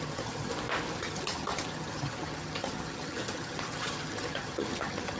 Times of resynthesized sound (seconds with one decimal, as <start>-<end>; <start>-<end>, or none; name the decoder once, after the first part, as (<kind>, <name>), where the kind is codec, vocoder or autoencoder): 0.0-0.5 (vocoder, HiFi-GAN); 1.0-5.2